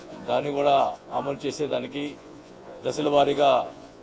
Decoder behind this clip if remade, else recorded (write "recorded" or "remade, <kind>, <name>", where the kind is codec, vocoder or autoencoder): remade, vocoder, Vocos